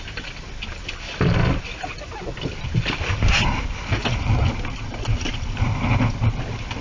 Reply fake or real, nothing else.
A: real